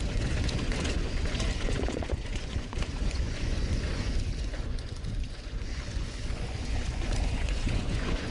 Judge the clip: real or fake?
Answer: fake